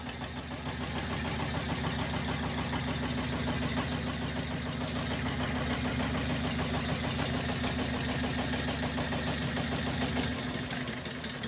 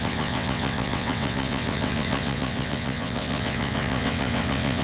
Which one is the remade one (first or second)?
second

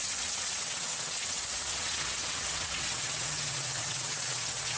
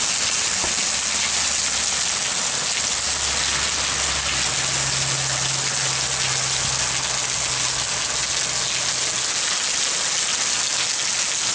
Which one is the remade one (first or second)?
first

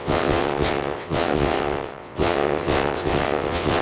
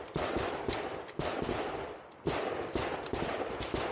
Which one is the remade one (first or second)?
first